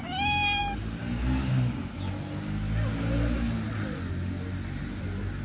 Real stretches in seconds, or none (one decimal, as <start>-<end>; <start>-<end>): 0.0-0.6; 1.9-5.4

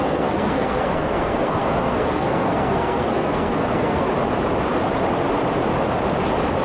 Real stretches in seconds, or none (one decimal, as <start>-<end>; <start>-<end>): 4.1-6.6

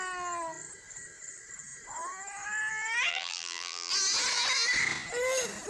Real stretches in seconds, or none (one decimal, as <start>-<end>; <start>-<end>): 0.0-3.1; 3.9-5.7

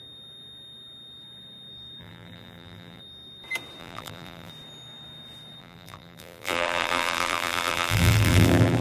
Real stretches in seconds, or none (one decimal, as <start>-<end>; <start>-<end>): 0.0-2.0; 3.0-3.8; 4.5-5.6

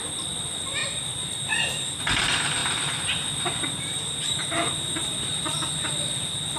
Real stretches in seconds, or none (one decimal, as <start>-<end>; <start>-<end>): 0.0-2.6; 5.7-6.6

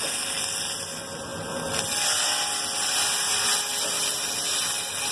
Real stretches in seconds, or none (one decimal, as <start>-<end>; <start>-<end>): 0.0-5.1